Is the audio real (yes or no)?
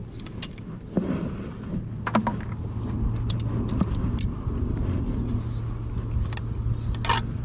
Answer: yes